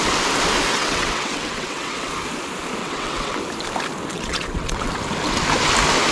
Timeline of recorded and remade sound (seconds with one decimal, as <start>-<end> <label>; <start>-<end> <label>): 0.0-0.7 recorded; 0.7-2.1 remade; 2.1-2.8 recorded; 2.8-3.4 remade; 3.4-4.1 recorded; 4.1-4.9 remade; 4.9-6.1 recorded